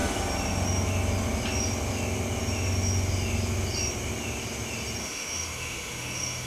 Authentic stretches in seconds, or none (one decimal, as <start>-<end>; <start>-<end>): 0.0-5.0